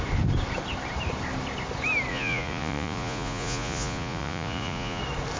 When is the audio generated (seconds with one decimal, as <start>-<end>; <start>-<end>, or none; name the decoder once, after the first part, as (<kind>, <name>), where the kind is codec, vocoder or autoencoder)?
2.1-5.0 (vocoder, Vocos)